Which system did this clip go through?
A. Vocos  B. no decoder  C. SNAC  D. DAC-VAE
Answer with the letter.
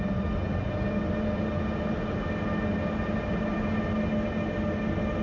B